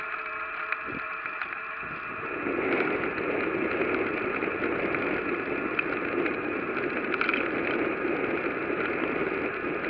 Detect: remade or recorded recorded